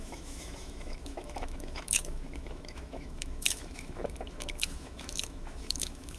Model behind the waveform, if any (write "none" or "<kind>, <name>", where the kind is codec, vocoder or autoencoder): autoencoder, DAC-VAE